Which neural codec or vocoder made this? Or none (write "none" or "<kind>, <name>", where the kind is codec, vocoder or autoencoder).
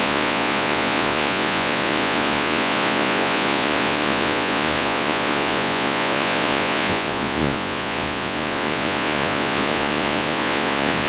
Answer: vocoder, Vocos